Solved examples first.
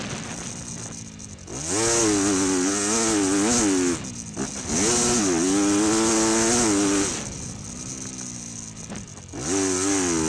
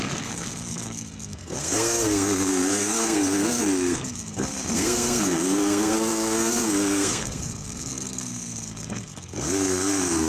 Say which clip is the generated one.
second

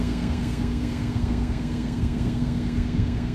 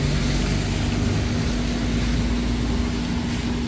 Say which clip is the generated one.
first